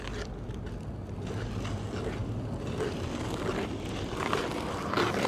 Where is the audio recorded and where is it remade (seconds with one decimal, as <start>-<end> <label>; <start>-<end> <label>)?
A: 0.0-5.3 recorded

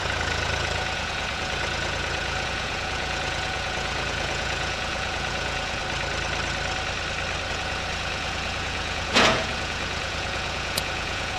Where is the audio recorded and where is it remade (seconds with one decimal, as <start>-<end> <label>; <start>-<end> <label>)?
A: 0.0-5.8 remade; 5.8-7.5 recorded; 7.5-11.4 remade

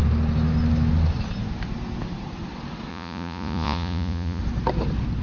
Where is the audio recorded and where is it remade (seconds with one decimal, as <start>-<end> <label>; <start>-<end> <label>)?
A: 0.0-2.9 recorded; 2.9-4.4 remade; 4.4-5.2 recorded

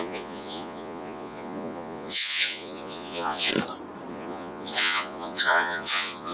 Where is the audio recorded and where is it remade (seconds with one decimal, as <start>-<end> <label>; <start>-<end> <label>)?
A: 0.0-3.5 remade; 3.5-4.1 recorded; 4.1-6.3 remade

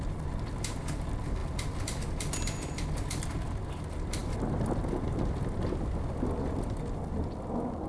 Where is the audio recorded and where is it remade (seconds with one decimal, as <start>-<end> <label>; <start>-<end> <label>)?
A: 0.0-7.9 recorded

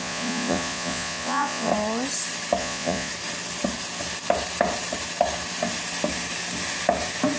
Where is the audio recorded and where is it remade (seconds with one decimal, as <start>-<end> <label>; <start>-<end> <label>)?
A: 0.0-1.7 remade; 1.7-2.6 recorded; 2.6-3.1 remade; 3.1-7.4 recorded

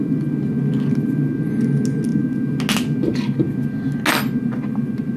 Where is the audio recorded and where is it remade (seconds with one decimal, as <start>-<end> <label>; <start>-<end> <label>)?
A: 0.0-5.2 recorded